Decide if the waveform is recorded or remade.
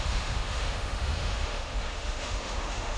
remade